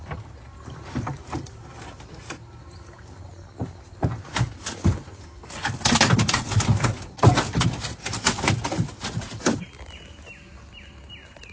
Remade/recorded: recorded